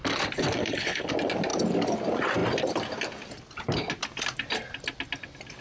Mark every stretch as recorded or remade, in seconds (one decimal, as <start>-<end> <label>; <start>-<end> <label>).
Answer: 0.0-0.6 recorded; 0.6-1.1 remade; 1.1-5.6 recorded